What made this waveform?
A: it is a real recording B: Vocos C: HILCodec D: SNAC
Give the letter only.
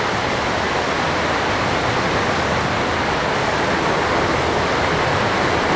A